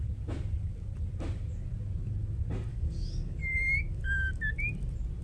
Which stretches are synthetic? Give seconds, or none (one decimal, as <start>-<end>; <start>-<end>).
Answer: 2.7-3.4; 3.9-4.4